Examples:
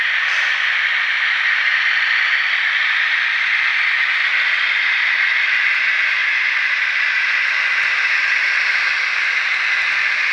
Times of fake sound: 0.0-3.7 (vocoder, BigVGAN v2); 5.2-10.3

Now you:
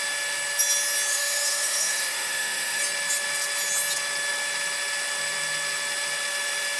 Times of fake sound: 1.1-2.8 (autoencoder, DAC-VAE)